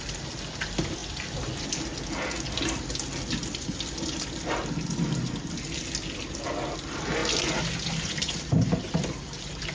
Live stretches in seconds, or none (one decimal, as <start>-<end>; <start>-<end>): 0.0-9.7